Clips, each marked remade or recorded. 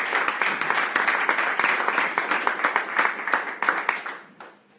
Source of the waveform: recorded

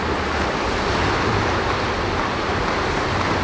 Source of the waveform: recorded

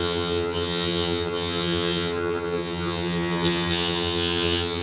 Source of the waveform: remade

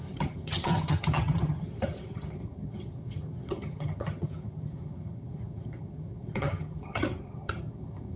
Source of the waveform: remade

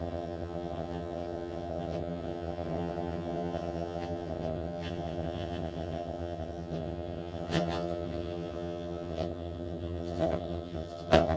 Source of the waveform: remade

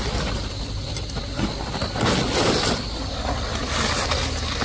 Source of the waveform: recorded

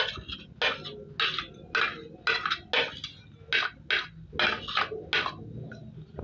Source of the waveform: recorded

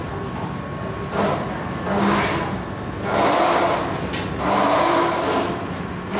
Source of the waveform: recorded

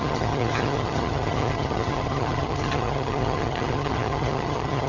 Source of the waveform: remade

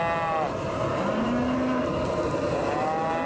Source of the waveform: recorded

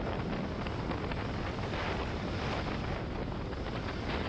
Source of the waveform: recorded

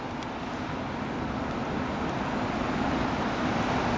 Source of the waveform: recorded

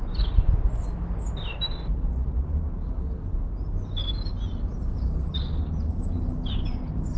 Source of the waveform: recorded